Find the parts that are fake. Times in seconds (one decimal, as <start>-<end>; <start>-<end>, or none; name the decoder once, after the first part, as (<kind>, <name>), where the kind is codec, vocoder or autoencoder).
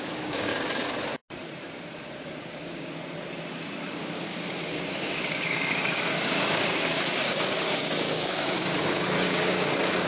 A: 0.0-0.5 (codec, DAC); 2.2-3.0; 3.9-10.1